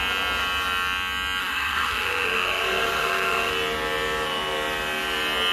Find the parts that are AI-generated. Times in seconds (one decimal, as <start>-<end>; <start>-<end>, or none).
1.4-3.5